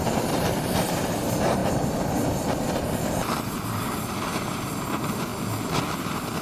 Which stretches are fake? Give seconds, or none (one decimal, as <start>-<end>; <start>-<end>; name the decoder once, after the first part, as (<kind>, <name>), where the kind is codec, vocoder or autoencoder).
0.0-1.6 (vocoder, BigVGAN v2); 2.9-5.3